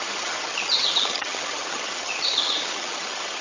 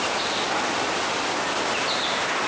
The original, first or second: second